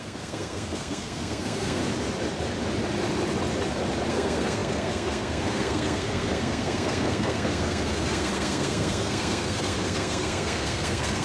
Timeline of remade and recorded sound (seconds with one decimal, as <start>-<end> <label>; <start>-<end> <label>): 0.0-1.8 remade; 1.8-4.1 recorded; 4.1-11.2 remade